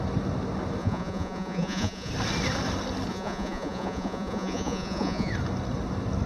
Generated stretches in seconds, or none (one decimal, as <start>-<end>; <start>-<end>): 0.8-2.1; 3.1-5.3